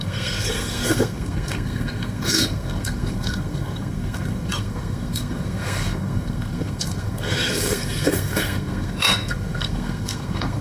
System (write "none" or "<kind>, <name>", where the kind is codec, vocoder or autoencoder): codec, SNAC